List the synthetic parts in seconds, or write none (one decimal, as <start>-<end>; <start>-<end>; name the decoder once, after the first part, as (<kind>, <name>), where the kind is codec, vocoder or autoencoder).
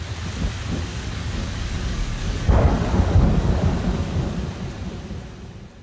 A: 0.9-4.4 (codec, DAC)